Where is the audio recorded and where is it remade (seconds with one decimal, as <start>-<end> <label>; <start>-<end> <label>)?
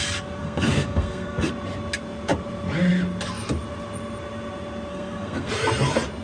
0.0-0.4 recorded; 0.4-1.5 remade; 1.5-4.9 recorded; 4.9-5.5 remade; 5.5-6.2 recorded